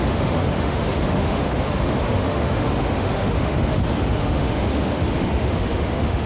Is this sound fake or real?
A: fake